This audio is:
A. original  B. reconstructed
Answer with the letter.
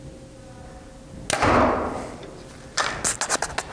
A